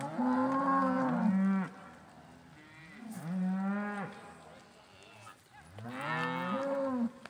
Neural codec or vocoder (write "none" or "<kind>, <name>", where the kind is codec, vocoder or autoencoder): none